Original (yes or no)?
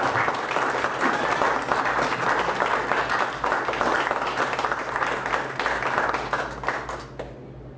yes